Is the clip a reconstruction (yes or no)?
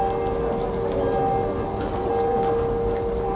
no